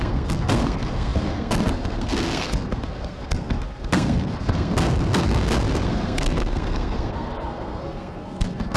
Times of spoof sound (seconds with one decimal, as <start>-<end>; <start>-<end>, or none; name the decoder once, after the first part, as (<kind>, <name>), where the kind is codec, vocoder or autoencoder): 0.0-8.8 (codec, SNAC)